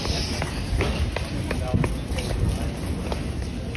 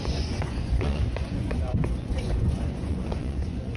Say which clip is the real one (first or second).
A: first